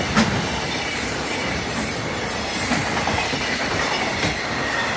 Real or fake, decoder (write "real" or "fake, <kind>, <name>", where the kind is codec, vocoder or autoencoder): fake, vocoder, BigVGAN v2